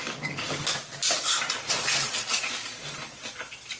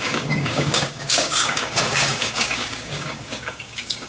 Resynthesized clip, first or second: second